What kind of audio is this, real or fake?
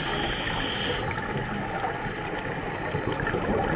real